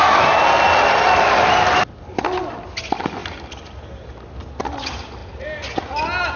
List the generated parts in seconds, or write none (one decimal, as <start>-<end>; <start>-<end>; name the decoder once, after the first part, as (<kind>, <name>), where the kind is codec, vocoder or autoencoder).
none